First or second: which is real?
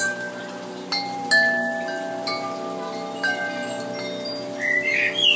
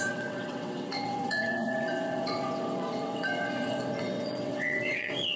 first